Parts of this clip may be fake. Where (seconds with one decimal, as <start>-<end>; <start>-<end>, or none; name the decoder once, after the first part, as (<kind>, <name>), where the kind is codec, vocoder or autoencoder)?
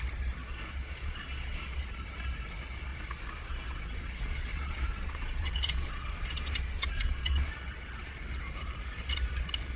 0.4-1.9 (vocoder, Vocos); 2.9-7.5